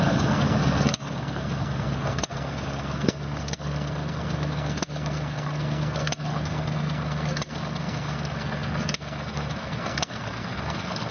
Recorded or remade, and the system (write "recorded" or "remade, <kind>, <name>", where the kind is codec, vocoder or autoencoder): remade, codec, SNAC